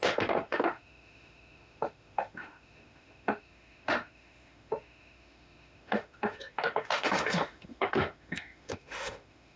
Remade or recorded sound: remade